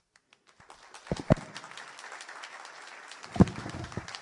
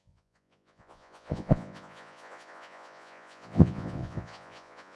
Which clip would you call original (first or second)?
first